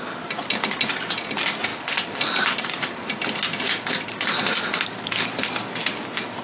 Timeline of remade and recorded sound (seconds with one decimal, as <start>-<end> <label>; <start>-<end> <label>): 0.0-6.4 recorded